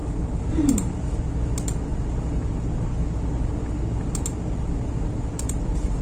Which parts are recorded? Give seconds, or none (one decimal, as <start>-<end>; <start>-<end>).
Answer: 1.2-6.0